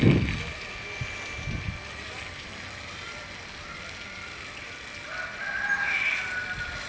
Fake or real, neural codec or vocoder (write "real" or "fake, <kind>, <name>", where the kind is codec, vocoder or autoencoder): real